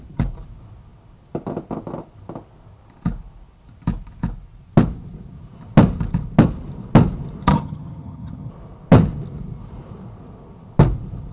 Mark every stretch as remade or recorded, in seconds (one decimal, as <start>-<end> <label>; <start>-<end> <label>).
0.0-7.5 recorded; 7.5-8.5 remade; 8.5-11.3 recorded